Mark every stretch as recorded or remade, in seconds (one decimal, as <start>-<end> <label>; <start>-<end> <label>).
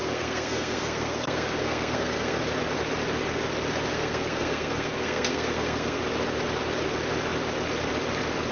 0.0-2.4 remade; 2.4-3.9 recorded; 3.9-6.0 remade; 6.0-8.5 recorded